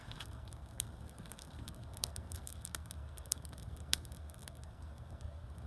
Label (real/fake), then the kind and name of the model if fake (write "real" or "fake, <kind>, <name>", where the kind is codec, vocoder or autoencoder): fake, codec, SNAC